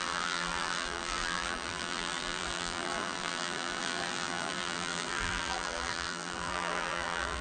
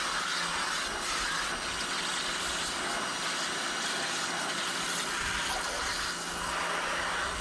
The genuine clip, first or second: second